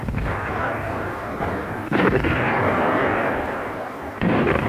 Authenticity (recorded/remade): remade